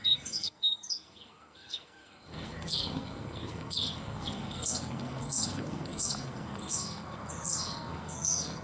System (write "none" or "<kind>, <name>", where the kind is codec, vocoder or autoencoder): codec, SNAC